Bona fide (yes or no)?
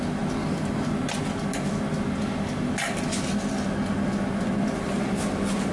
yes